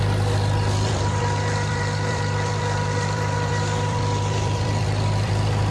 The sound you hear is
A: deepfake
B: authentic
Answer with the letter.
A